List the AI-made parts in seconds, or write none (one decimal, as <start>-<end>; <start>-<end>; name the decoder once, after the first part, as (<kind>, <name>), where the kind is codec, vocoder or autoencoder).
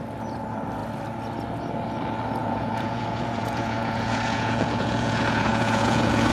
2.4-6.3 (vocoder, Vocos)